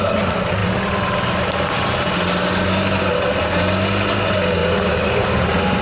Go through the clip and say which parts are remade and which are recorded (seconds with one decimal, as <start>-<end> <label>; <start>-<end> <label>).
0.0-5.8 recorded